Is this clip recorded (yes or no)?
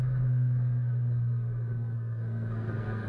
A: no